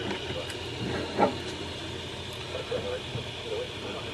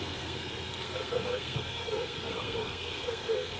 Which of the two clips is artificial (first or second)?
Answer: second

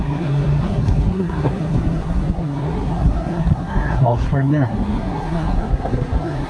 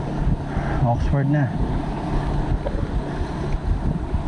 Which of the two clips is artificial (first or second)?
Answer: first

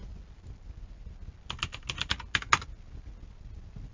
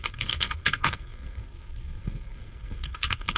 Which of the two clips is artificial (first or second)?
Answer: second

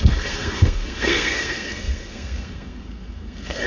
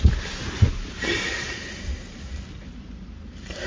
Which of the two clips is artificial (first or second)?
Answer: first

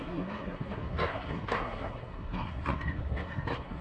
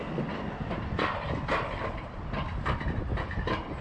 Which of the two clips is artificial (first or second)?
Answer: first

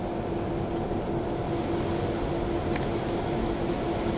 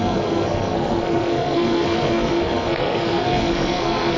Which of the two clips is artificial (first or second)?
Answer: second